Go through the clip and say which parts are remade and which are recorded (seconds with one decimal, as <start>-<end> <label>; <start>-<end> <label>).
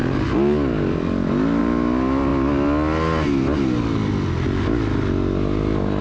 0.0-6.0 recorded